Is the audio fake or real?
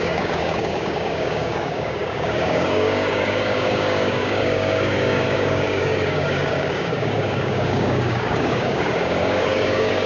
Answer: fake